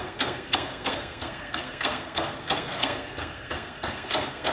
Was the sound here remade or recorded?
remade